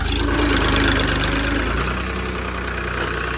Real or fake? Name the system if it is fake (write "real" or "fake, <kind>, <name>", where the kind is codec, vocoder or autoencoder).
real